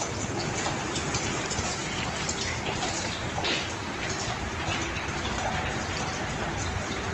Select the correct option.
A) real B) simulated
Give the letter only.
A